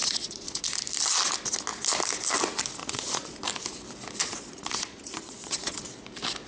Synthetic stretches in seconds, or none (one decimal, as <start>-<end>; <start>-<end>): 0.0-0.6; 2.8-3.4; 4.2-5.8